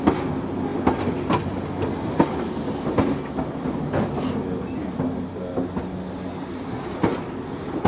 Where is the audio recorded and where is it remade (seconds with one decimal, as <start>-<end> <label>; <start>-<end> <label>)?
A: 0.0-7.9 recorded